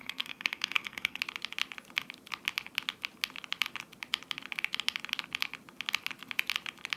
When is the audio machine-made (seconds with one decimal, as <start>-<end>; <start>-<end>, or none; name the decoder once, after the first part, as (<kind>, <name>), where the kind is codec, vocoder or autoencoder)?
0.0-1.2 (codec, SNAC)